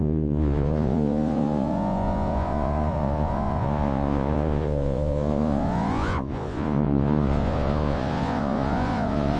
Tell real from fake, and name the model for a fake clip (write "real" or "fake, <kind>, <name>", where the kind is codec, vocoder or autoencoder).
fake, vocoder, Vocos